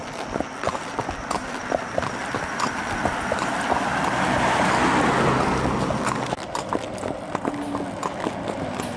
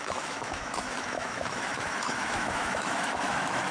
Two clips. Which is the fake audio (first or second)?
second